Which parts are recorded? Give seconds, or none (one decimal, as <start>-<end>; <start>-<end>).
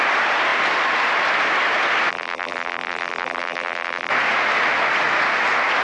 0.0-2.1; 4.1-5.8